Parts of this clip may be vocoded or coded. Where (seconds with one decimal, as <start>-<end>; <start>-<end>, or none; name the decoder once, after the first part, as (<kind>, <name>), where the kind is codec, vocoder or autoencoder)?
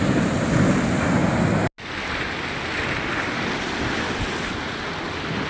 none